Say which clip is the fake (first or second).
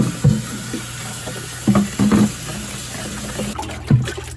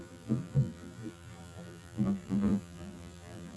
second